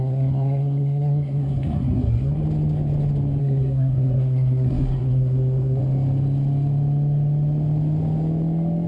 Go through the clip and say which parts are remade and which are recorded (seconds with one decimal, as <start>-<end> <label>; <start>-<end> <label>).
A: 0.0-2.4 remade; 2.4-3.4 recorded; 3.4-5.8 remade; 5.8-8.9 recorded

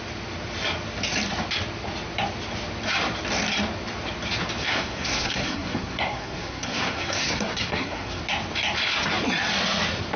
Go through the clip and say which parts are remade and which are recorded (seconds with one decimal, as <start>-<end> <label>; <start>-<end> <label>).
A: 0.0-4.6 recorded; 4.6-8.2 remade; 8.2-10.2 recorded

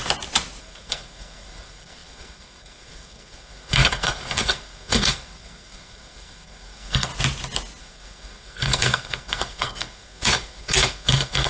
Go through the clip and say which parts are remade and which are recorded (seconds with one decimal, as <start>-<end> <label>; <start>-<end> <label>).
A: 0.0-0.6 recorded; 0.6-7.1 remade; 7.1-7.8 recorded; 7.8-11.5 remade